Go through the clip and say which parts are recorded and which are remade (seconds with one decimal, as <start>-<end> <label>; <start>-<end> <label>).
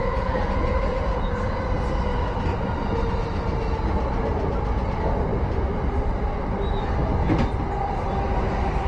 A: 0.0-1.3 remade; 1.3-8.9 recorded